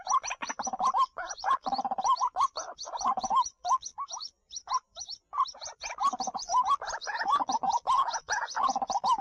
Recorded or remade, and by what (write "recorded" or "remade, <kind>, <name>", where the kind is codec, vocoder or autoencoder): remade, vocoder, BigVGAN v2